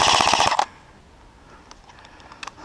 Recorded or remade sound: recorded